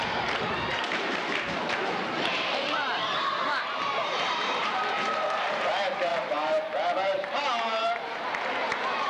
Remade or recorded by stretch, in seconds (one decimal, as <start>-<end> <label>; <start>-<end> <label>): 0.0-9.1 remade